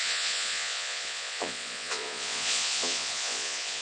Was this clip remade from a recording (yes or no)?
yes